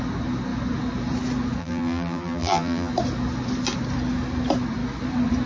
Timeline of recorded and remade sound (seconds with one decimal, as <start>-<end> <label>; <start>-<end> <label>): 0.0-1.6 recorded; 1.6-2.9 remade; 2.9-5.5 recorded